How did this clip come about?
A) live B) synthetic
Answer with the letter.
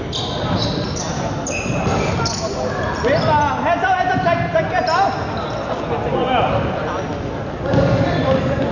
A